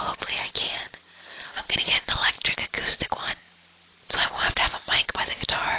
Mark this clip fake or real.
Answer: real